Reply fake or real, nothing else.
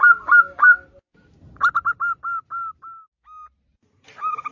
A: real